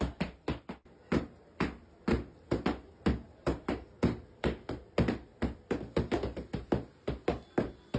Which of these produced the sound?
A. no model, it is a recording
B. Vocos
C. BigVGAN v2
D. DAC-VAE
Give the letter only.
A